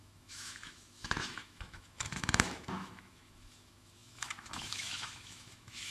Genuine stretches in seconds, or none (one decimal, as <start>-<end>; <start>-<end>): none